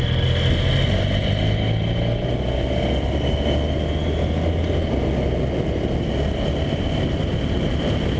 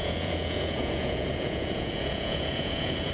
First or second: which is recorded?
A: first